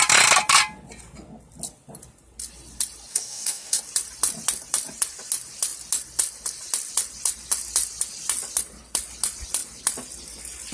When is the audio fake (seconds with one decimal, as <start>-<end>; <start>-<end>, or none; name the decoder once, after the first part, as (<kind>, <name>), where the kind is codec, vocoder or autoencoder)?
3.1-3.8 (codec, DAC)